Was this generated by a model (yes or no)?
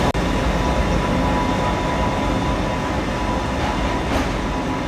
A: no